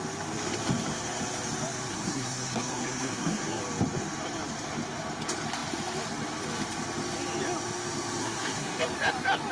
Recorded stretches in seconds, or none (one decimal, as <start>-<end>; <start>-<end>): 0.0-1.9; 3.6-8.2; 8.8-9.5